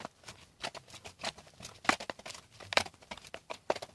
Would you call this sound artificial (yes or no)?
no